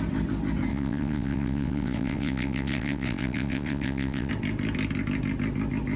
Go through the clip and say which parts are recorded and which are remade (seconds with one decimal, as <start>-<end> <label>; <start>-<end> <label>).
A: 0.0-0.7 recorded; 0.7-4.3 remade; 4.3-6.0 recorded